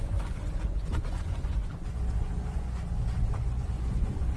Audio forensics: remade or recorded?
remade